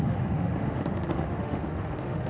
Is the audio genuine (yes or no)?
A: no